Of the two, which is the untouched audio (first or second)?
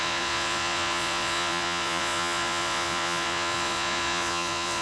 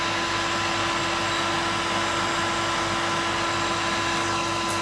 second